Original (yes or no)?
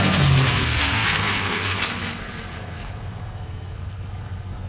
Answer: no